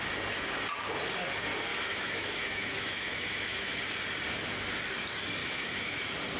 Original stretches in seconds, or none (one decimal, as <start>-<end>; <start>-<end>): 0.0-1.7; 3.8-5.4; 6.0-6.4